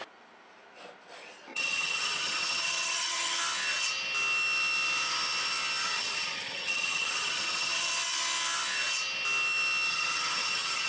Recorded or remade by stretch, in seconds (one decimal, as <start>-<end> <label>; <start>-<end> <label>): 0.0-1.5 recorded; 1.5-3.4 remade; 3.4-5.8 recorded; 5.8-7.9 remade; 7.9-9.9 recorded; 9.9-10.9 remade